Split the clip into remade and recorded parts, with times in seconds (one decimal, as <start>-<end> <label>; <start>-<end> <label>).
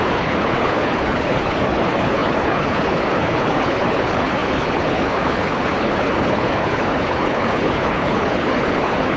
0.0-9.2 remade